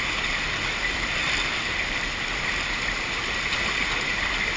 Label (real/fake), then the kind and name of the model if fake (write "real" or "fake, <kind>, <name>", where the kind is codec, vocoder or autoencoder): real